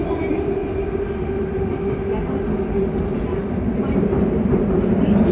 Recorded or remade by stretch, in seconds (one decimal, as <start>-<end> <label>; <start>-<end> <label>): 0.0-0.6 remade; 0.6-2.9 recorded; 2.9-5.3 remade